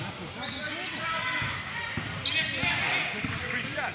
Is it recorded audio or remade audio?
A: recorded